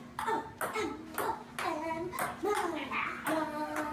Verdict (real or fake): real